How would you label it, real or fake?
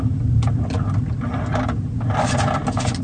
real